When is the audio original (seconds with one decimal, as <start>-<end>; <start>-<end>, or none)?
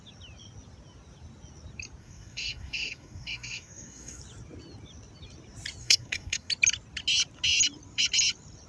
0.0-2.0; 4.2-5.8; 6.5-8.7